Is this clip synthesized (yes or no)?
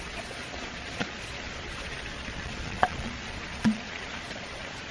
yes